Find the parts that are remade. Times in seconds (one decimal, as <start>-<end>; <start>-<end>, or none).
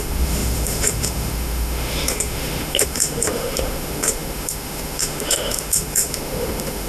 0.0-6.9